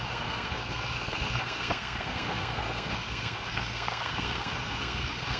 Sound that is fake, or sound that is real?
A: fake